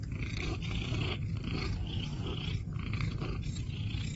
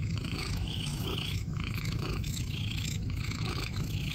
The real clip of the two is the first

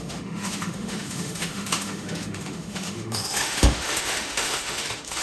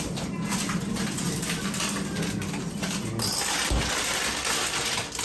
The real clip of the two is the second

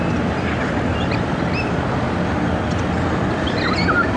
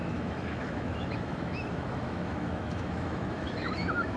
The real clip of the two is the first